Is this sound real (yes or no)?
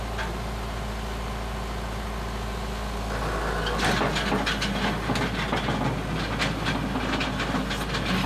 yes